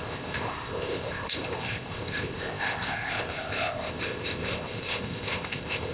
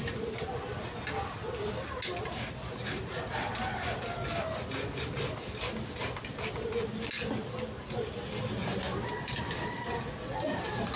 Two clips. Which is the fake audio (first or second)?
first